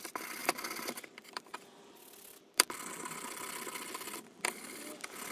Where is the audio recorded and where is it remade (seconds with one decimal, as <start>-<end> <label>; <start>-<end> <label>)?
0.0-5.3 remade